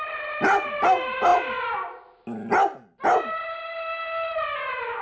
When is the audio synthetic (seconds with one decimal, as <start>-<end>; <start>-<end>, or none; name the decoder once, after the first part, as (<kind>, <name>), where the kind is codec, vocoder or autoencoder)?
0.0-1.3 (vocoder, BigVGAN v2); 4.3-5.0